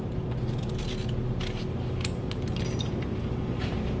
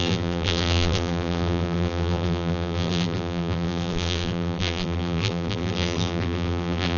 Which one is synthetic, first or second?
second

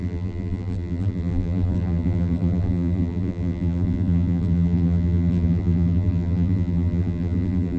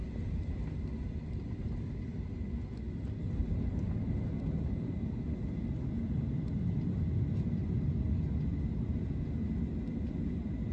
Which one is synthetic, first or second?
first